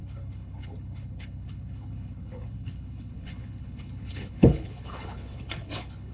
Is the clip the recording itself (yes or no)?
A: no